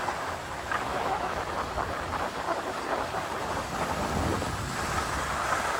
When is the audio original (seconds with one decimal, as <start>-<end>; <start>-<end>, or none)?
0.0-0.9; 1.4-5.8